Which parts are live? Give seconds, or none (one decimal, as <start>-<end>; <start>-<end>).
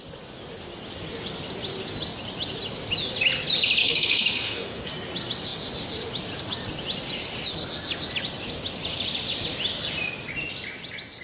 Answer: 0.0-3.8; 4.9-11.2